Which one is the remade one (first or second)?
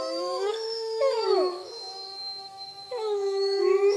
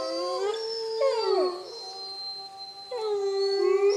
first